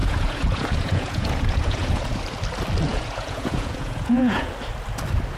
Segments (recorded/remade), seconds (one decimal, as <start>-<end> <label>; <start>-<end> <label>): 0.0-2.2 remade; 2.2-2.9 recorded; 2.9-4.5 remade; 4.5-5.4 recorded